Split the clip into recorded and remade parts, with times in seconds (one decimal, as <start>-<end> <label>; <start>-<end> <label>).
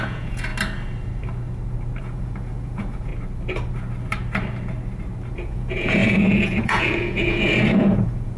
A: 0.0-0.5 remade; 0.5-2.0 recorded; 2.0-3.1 remade; 3.1-5.3 recorded; 5.3-8.4 remade